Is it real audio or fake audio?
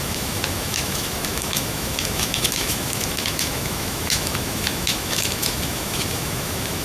fake